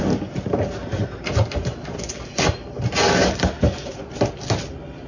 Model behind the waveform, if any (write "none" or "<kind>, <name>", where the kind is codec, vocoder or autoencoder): none